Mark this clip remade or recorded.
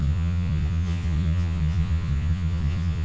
remade